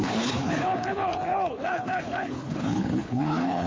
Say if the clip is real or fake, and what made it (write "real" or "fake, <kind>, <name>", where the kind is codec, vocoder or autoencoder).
fake, codec, HILCodec